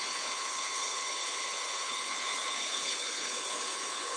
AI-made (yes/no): yes